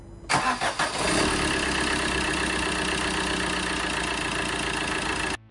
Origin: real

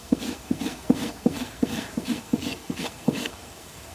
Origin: fake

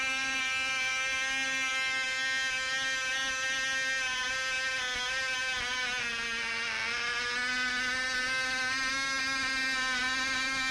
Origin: real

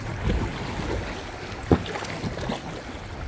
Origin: real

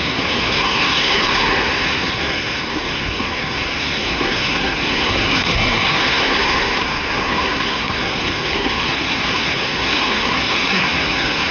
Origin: fake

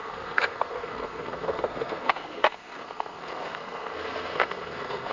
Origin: fake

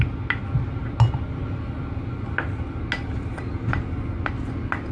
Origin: real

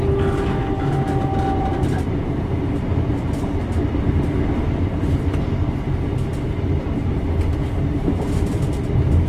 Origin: real